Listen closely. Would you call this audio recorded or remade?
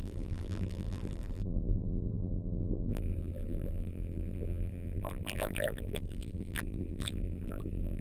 remade